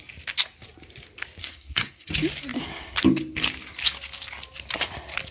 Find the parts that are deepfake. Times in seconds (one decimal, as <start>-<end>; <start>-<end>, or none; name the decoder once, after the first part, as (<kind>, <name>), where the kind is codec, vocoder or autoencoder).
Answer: 1.4-2.1 (codec, SNAC)